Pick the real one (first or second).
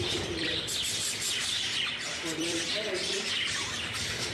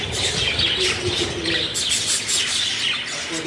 second